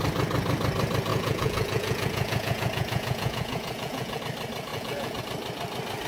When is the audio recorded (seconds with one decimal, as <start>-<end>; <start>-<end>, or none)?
0.0-1.1; 4.2-4.7; 5.2-6.1